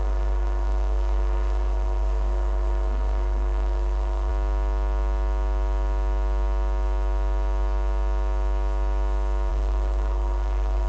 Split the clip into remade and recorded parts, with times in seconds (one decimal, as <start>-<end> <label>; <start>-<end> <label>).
0.0-4.3 remade; 4.3-9.5 recorded; 9.5-10.9 remade

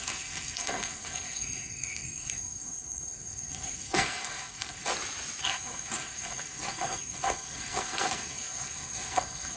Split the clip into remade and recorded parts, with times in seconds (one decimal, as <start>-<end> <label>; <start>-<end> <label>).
0.0-4.9 remade; 4.9-5.4 recorded; 5.4-9.6 remade

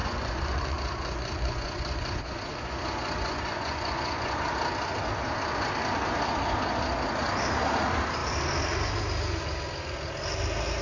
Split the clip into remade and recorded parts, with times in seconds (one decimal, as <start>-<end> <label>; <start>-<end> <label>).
0.0-4.4 remade; 4.4-10.8 recorded

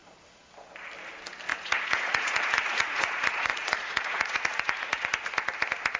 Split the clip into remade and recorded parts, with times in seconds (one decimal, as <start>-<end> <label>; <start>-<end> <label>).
0.0-1.5 recorded; 1.5-5.1 remade; 5.1-6.0 recorded

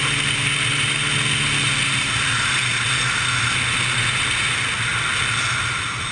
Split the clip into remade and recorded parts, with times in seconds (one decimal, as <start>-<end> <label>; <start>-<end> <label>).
0.0-6.1 recorded